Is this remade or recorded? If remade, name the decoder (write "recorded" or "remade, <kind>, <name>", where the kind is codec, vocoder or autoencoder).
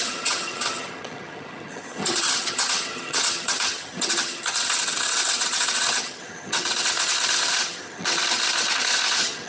remade, vocoder, HiFi-GAN